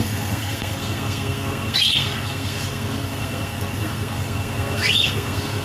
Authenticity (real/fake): fake